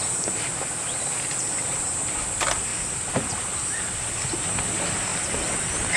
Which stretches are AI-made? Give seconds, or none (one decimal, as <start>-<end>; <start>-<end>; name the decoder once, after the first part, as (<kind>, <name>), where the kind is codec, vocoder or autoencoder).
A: none